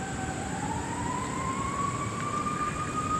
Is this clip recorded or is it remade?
recorded